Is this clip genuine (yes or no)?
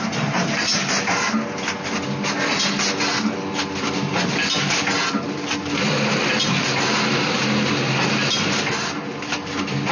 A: yes